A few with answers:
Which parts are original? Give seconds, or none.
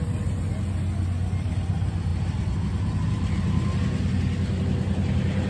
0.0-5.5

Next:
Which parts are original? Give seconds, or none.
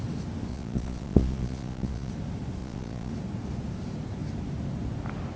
0.0-0.5; 2.1-2.6; 3.1-5.4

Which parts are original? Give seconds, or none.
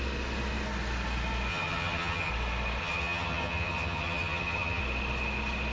0.0-1.5; 2.3-2.8; 4.8-5.7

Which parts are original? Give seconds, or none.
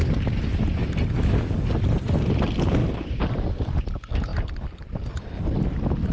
0.0-2.8; 3.3-4.3; 4.9-6.1